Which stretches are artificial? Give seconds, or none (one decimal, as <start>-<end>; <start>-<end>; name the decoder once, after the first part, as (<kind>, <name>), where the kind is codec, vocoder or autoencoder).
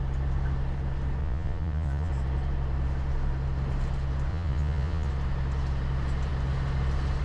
1.2-2.1 (vocoder, Vocos); 4.3-5.1